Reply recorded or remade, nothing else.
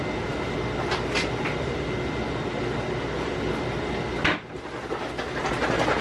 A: recorded